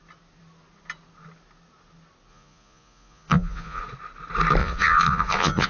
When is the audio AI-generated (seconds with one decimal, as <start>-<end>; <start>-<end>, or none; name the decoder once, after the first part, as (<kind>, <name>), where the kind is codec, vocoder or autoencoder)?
2.3-3.8 (vocoder, Vocos); 4.6-5.7